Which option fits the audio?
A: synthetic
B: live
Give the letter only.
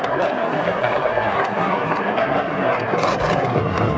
A